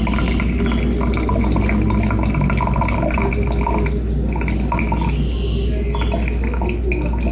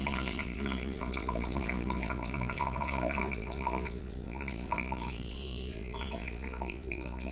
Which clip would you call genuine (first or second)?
first